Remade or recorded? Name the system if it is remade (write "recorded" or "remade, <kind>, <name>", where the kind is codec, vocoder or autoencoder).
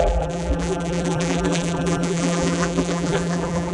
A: remade, vocoder, BigVGAN v2